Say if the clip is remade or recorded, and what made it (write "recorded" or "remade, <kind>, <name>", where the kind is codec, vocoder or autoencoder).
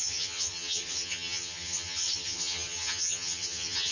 remade, vocoder, HiFi-GAN